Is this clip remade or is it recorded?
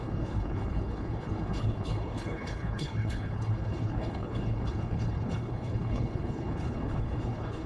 remade